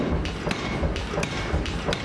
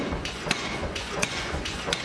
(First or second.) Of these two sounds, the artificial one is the second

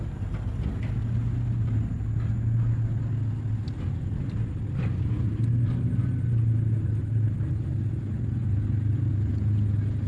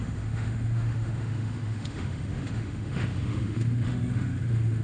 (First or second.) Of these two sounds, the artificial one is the second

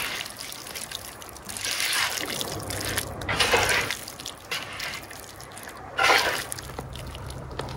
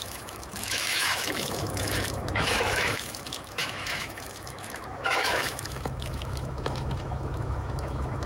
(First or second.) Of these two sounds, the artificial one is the second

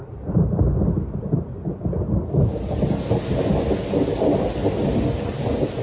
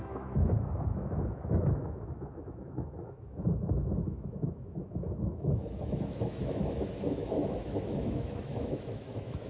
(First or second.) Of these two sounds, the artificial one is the second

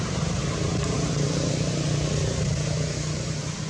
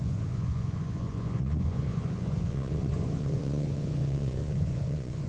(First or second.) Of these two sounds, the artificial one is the second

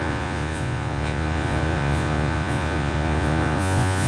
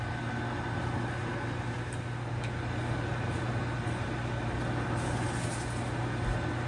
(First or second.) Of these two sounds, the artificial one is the first